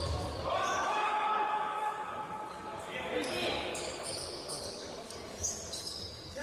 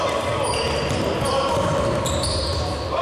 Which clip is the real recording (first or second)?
second